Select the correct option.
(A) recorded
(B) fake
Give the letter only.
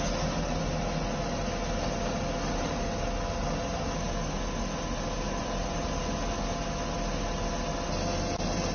A